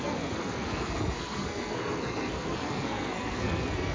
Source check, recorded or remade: remade